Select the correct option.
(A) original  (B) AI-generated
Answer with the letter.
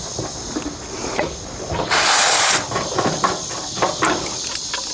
A